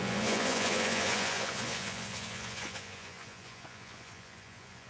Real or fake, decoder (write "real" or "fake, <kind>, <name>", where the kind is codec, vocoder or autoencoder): fake, vocoder, Vocos